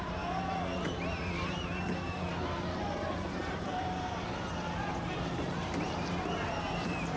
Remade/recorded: remade